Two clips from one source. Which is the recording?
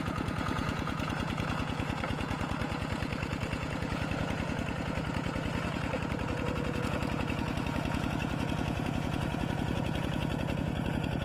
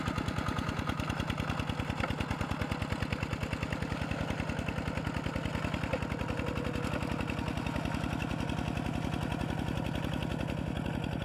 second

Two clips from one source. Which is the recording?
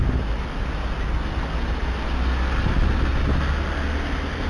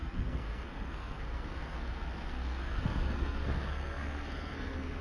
first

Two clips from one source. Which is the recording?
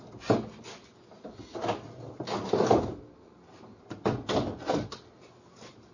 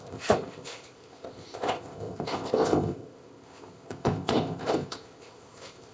first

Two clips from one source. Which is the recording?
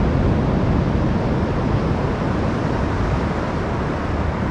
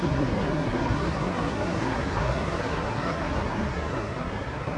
first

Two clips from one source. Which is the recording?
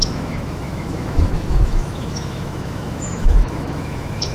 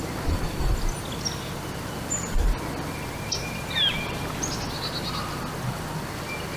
second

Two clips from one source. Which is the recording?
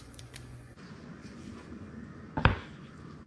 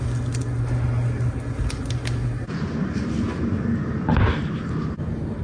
second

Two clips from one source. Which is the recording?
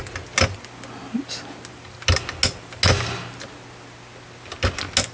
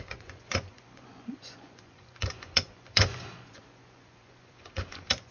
first